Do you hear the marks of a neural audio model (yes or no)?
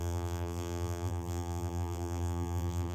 yes